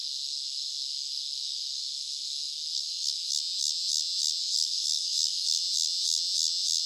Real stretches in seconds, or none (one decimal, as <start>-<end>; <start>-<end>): 3.3-4.4; 5.6-6.9